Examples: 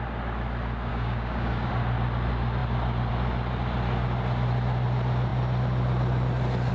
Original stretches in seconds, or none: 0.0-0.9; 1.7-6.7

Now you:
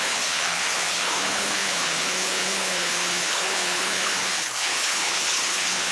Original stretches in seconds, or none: none

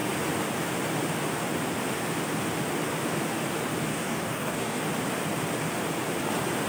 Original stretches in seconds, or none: 0.0-3.9; 4.8-6.7

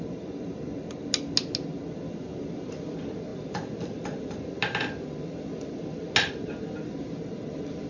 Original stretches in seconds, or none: 0.0-7.9

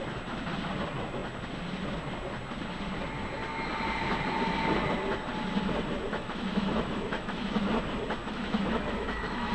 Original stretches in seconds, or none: 0.0-6.1; 7.7-8.2

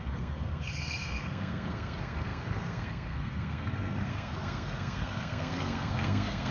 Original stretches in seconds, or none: none

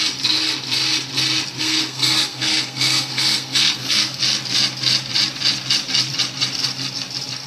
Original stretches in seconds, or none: 0.0-1.6; 4.2-7.5

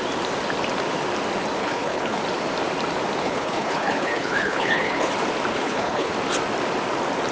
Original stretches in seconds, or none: 0.0-1.6; 2.2-3.2; 5.1-5.5; 6.1-7.3